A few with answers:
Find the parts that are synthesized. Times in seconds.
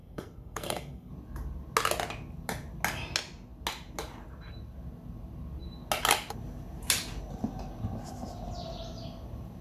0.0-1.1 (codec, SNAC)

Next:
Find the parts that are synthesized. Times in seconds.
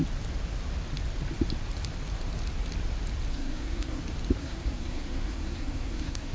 3.3-4.0 (codec, SNAC); 4.4-6.3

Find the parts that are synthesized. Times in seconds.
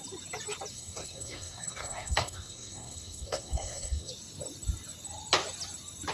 0.7-4.1 (codec, SNAC)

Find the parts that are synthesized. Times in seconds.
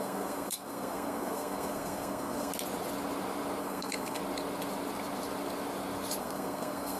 0.0-2.5 (codec, SNAC); 3.6-4.2; 6.2-7.0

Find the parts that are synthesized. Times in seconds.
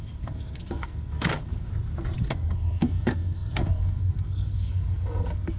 0.0-1.7 (codec, SNAC); 2.3-5.6